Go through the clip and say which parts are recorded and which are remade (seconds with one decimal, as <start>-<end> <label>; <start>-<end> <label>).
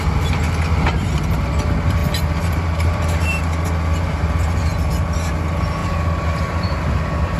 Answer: 0.0-2.0 recorded; 2.0-4.3 remade; 4.3-5.8 recorded; 5.8-6.8 remade; 6.8-7.4 recorded